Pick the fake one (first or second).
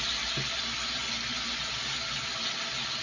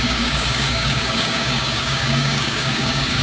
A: second